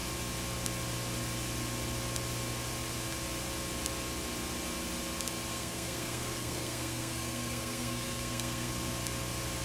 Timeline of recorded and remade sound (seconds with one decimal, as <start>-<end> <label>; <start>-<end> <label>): 0.0-5.5 recorded; 5.5-8.7 remade; 8.7-9.6 recorded